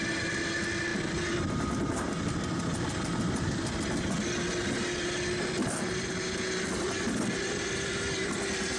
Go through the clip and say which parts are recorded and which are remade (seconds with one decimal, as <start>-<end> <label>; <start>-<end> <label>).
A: 0.0-8.8 recorded